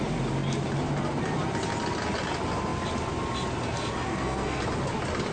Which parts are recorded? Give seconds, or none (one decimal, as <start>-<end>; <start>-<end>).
0.0-4.1; 4.6-5.3

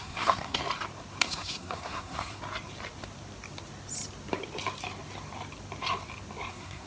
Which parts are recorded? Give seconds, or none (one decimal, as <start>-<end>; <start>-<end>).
0.6-1.2; 2.4-6.5

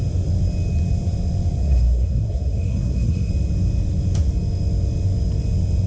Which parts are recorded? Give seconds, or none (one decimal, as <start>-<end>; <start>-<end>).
0.0-1.6; 3.3-5.9

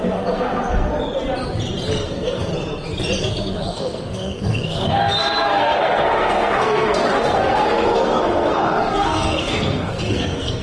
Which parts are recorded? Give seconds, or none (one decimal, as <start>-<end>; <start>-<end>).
0.9-2.0; 2.5-3.2